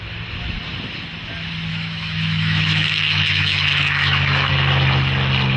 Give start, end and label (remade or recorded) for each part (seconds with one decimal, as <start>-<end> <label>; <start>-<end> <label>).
0.0-1.7 recorded; 1.7-4.5 remade; 4.5-5.6 recorded